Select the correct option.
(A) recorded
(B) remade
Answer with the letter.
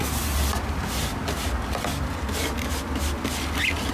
A